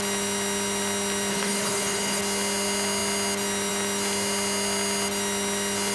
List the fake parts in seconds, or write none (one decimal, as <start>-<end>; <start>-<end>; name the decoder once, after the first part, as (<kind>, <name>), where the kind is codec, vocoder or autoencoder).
1.3-2.2 (codec, HILCodec)